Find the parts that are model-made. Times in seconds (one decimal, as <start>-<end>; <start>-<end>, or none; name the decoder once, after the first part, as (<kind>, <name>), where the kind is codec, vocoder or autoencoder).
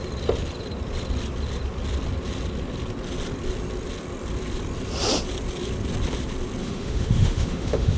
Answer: 6.6-8.0 (autoencoder, DAC-VAE)